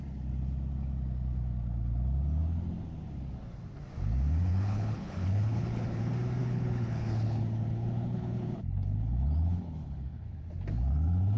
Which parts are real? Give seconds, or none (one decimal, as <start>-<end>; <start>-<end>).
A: 0.0-4.5; 6.0-6.4; 10.4-11.4